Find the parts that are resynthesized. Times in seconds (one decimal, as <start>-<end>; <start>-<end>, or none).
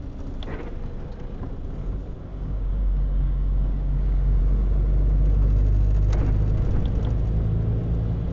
2.3-4.4